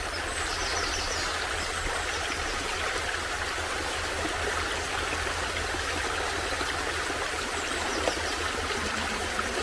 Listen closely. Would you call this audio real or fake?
real